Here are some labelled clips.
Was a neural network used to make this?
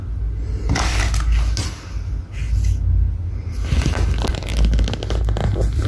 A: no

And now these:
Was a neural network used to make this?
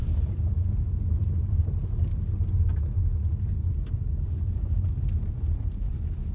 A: no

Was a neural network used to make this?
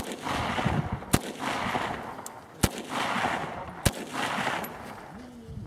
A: no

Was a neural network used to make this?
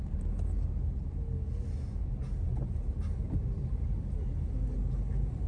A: no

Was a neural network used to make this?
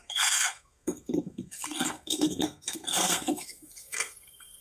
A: yes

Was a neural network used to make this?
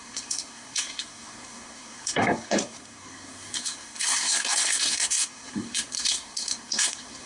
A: yes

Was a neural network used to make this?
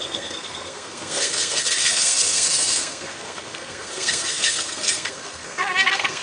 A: yes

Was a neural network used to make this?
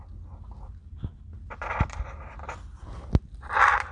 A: no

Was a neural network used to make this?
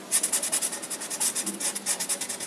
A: no